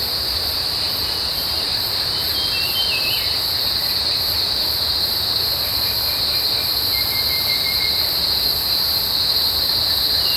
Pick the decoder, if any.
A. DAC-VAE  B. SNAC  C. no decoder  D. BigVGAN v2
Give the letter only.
D